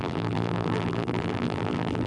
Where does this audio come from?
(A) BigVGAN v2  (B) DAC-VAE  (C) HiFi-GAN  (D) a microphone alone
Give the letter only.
A